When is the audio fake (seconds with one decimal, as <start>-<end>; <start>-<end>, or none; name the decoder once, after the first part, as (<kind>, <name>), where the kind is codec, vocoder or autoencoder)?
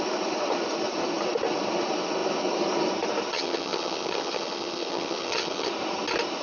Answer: 3.3-5.7 (vocoder, HiFi-GAN)